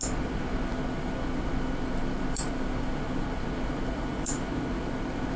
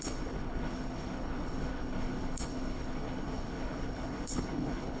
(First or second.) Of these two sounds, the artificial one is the second